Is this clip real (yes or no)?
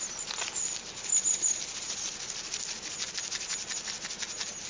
yes